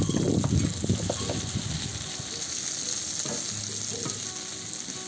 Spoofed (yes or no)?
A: no